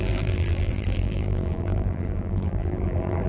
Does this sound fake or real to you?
fake